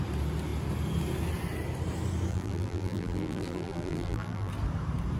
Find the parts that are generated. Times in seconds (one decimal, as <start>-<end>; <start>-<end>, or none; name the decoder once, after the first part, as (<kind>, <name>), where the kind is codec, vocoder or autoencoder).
2.3-4.5 (vocoder, BigVGAN v2)